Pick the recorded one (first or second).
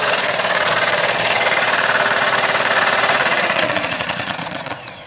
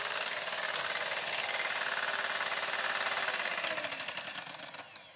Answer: second